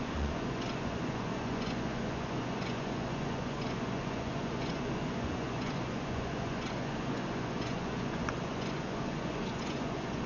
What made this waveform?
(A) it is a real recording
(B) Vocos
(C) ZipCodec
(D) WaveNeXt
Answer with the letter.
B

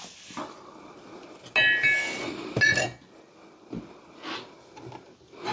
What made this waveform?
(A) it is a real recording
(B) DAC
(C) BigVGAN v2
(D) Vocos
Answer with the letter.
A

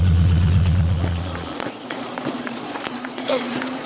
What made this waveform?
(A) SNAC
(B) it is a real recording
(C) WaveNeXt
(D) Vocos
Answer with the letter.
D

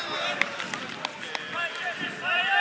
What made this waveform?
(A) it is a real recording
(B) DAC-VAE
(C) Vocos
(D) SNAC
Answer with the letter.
A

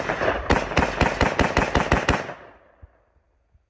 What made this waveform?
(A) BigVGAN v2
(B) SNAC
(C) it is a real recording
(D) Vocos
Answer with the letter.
C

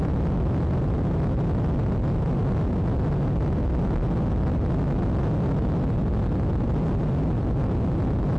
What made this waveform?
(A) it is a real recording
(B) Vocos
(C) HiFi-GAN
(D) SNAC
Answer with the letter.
A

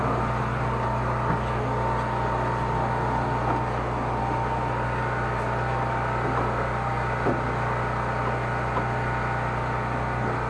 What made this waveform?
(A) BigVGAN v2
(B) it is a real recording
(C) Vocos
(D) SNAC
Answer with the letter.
B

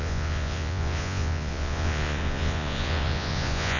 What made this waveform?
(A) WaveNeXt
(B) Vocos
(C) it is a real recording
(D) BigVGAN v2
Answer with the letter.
B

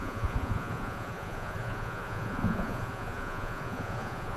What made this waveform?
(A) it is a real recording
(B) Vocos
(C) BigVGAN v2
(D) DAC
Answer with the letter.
B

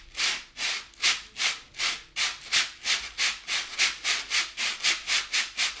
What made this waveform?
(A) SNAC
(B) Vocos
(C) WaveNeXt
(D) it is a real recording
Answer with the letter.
D